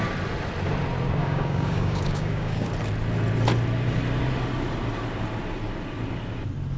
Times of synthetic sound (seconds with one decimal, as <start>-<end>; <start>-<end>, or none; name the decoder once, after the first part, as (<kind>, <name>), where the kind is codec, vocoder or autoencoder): 1.2-2.7 (codec, DAC)